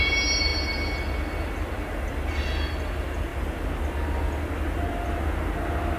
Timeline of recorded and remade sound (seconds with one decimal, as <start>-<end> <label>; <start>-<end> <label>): 0.0-6.0 recorded